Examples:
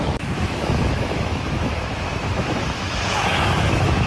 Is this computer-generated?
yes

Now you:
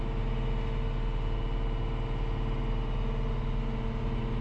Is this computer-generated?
no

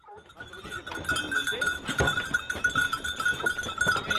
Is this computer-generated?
no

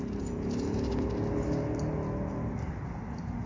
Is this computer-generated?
no